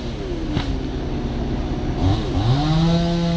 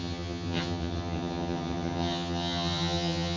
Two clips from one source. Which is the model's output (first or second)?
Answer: second